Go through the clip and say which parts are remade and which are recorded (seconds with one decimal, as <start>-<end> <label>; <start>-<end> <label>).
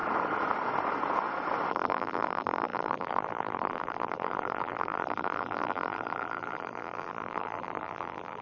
0.0-1.7 recorded; 1.7-8.4 remade